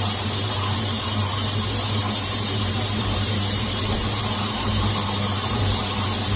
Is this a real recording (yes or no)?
no